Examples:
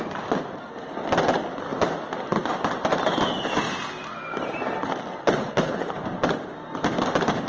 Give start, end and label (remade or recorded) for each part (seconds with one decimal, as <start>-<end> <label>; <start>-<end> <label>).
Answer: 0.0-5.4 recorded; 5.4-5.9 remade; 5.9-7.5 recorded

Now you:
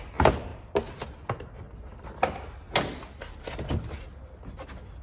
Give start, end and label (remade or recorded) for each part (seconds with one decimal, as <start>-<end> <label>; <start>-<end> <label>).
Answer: 0.0-5.0 recorded

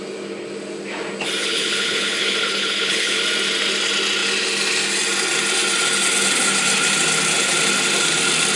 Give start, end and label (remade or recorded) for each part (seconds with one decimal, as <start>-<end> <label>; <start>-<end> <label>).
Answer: 0.0-1.4 recorded; 1.4-3.2 remade; 3.2-8.6 recorded

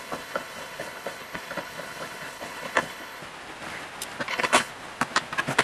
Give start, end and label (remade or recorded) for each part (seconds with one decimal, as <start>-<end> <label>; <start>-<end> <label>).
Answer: 0.0-3.2 remade; 3.2-4.3 recorded; 4.3-4.7 remade; 4.7-5.6 recorded

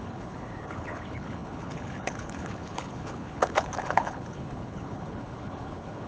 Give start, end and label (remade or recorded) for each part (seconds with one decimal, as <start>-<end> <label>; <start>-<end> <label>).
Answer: 0.0-6.1 remade

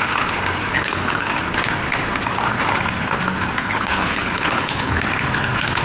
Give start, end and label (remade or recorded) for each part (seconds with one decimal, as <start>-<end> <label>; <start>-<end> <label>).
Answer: 0.0-0.7 recorded; 0.7-1.3 remade; 1.3-3.6 recorded; 3.6-5.0 remade; 5.0-5.8 recorded